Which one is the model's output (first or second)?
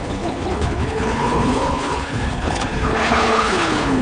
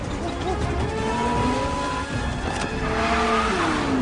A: first